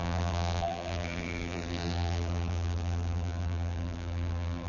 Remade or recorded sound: remade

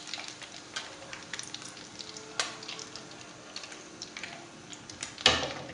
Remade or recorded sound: recorded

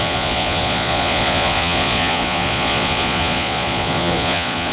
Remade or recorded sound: remade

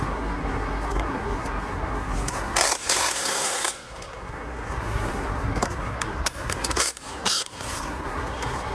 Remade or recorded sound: remade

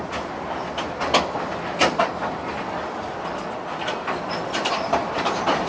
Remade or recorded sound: recorded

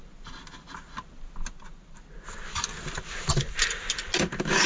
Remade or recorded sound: recorded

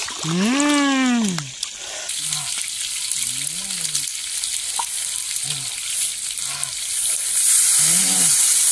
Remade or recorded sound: recorded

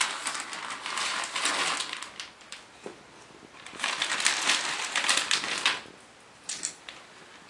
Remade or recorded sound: recorded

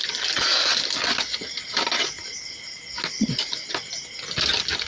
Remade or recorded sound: recorded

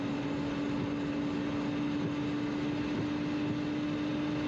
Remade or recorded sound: recorded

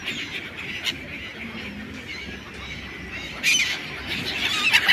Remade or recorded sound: recorded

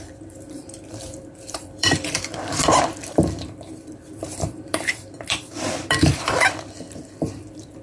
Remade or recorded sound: remade